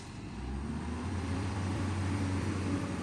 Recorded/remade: remade